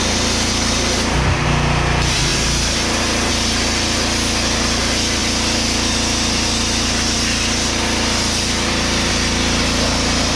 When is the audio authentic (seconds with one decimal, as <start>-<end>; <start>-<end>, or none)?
0.0-10.4